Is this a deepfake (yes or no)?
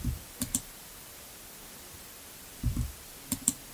yes